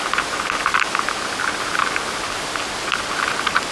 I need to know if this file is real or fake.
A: real